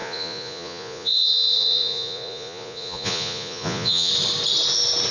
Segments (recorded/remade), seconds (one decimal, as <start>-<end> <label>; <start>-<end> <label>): 0.0-4.1 remade; 4.1-5.1 recorded